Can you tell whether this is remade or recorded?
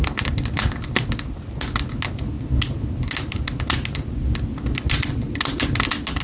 recorded